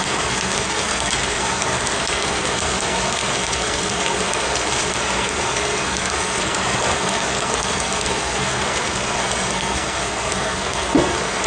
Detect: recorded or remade remade